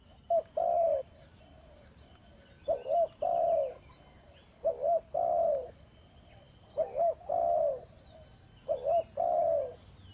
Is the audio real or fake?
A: real